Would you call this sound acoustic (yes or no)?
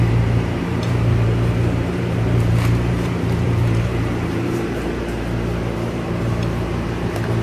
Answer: no